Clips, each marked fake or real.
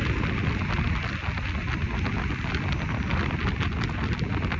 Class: real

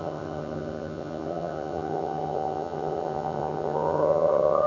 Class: fake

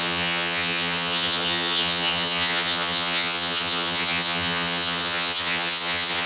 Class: fake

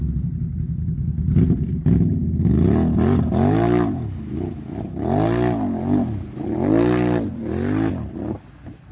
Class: real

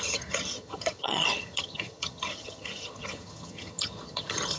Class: fake